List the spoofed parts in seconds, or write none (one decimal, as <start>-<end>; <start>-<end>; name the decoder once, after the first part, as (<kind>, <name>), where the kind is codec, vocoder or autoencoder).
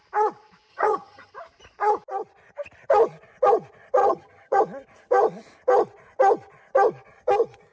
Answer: 0.7-1.3 (vocoder, HiFi-GAN); 4.0-4.6